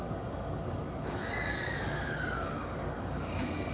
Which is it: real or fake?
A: fake